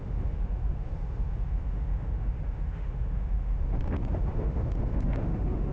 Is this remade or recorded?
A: remade